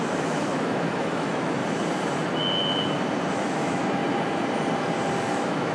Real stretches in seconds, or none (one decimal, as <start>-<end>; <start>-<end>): 1.6-3.3; 4.0-5.2